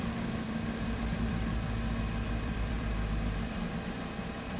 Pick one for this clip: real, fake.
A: fake